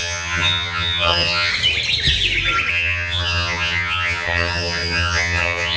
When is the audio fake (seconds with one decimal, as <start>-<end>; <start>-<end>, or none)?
0.0-1.5; 2.7-5.8